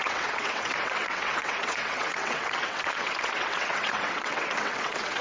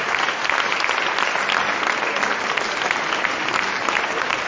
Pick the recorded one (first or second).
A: second